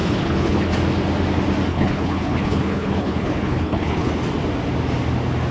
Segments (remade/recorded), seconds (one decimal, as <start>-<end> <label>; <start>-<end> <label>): 0.0-0.7 remade; 0.7-1.7 recorded; 1.7-4.1 remade; 4.1-5.5 recorded